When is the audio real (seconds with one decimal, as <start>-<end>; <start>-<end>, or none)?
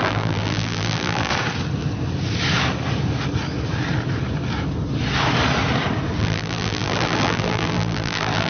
1.3-6.2